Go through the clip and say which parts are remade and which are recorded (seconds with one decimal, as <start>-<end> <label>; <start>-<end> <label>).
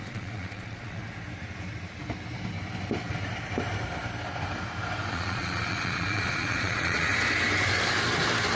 0.0-1.0 remade; 1.0-5.1 recorded; 5.1-7.1 remade; 7.1-8.6 recorded